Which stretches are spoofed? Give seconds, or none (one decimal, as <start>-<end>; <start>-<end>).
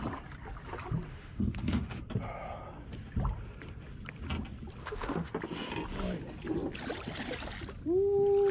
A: 1.1-2.0; 4.8-5.3